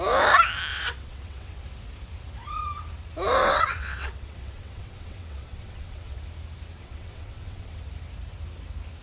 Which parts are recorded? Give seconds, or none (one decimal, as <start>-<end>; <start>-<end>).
0.0-0.7; 1.6-3.4; 6.2-6.8; 7.8-9.0